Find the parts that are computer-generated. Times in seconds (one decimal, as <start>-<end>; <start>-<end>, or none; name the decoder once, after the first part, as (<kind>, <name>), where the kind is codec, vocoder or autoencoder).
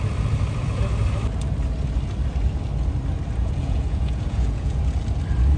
3.4-4.8 (vocoder, Vocos)